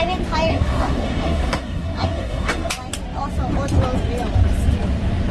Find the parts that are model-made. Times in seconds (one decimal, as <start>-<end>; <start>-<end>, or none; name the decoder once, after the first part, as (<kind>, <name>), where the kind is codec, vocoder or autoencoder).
0.5-2.7 (codec, SNAC)